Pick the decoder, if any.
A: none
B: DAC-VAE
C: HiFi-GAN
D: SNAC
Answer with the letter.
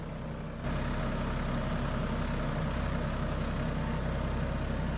A